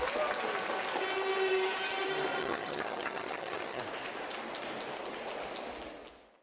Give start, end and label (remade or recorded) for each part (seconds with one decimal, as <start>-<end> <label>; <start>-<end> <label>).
0.0-2.4 recorded; 2.4-3.8 remade; 3.8-6.4 recorded